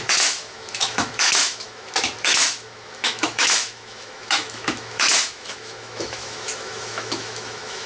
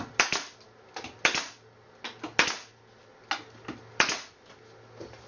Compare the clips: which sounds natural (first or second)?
second